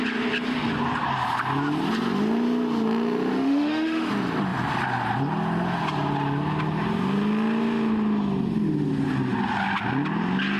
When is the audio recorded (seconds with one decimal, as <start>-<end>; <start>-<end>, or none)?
0.0-3.3; 4.1-10.6

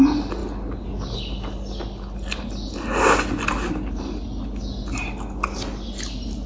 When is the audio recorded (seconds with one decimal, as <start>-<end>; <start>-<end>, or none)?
0.0-6.5

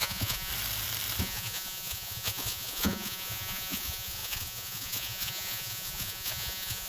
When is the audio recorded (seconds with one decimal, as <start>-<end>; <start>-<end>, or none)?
0.5-1.2

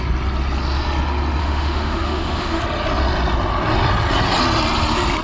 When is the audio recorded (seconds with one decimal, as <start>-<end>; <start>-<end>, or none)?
0.0-1.4; 2.6-5.2